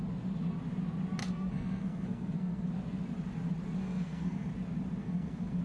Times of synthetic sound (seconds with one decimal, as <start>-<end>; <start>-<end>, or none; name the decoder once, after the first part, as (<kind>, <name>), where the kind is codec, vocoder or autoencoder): 1.2-2.7 (codec, SNAC); 3.8-4.5; 5.0-5.6